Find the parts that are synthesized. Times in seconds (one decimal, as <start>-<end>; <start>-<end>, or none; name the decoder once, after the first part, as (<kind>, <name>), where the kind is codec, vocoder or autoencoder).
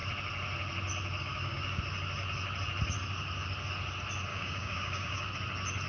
1.2-1.8 (codec, DAC); 4.3-5.3